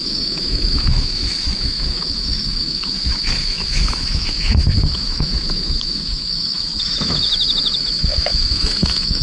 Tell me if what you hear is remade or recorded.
remade